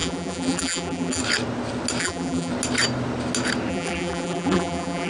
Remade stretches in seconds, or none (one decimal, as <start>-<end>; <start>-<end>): 0.0-1.2; 2.0-2.5; 3.7-5.1